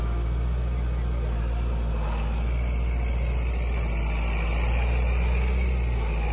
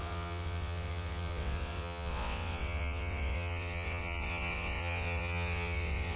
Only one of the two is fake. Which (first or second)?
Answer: second